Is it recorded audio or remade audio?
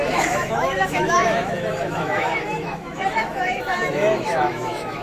remade